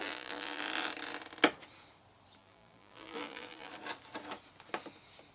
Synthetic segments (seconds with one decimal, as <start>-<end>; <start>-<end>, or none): 0.0-0.6; 2.4-3.7